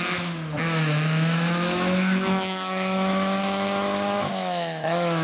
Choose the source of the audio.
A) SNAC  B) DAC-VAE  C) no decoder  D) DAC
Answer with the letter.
B